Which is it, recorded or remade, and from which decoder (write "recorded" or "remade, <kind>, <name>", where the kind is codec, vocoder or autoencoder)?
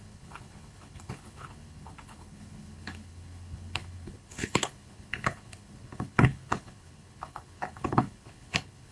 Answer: remade, codec, HILCodec